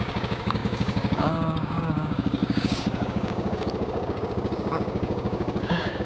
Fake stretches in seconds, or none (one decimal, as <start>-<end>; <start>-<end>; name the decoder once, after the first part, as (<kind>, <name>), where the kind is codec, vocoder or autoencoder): 0.0-6.0 (codec, DAC)

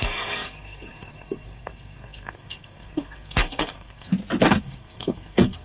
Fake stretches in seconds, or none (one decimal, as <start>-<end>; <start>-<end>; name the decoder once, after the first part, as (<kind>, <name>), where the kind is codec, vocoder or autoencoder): 0.0-4.1 (codec, SNAC); 4.6-5.6